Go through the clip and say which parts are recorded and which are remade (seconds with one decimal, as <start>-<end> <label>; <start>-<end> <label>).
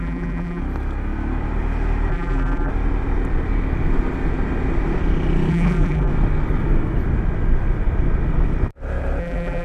0.0-0.6 remade; 0.6-2.1 recorded; 2.1-2.7 remade; 2.7-5.5 recorded; 5.5-6.1 remade; 6.1-9.2 recorded; 9.2-9.6 remade